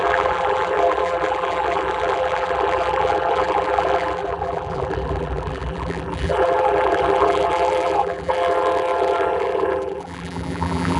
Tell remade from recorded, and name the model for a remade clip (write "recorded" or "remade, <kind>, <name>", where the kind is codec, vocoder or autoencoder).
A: remade, vocoder, BigVGAN v2